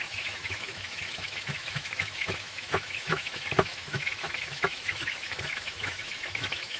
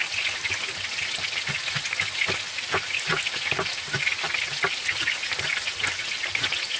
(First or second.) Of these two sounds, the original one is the second